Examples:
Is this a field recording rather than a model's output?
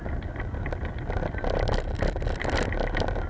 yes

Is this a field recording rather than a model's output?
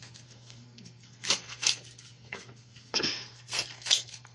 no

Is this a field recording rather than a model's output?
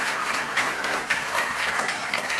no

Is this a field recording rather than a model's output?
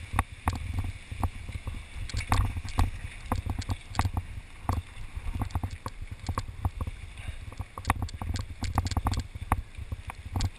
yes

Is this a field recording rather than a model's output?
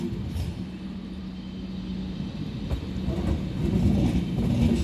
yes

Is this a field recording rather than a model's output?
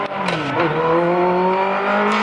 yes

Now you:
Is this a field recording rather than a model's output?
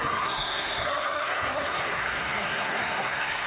no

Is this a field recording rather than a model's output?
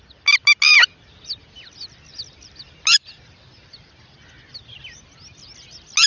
yes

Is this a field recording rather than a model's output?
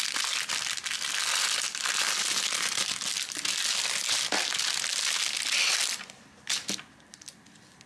yes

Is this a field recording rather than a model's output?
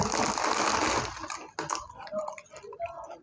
yes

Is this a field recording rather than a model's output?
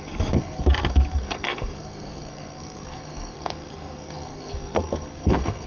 no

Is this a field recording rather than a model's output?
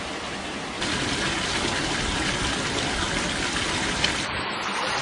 yes